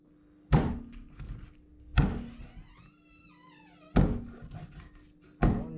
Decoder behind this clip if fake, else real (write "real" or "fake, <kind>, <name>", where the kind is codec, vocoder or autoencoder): real